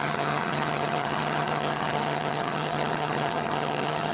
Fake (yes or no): yes